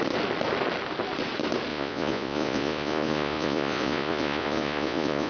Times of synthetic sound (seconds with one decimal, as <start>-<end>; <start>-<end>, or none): 1.7-5.3